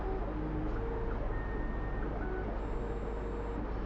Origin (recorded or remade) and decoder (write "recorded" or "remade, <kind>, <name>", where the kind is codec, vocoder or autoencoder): recorded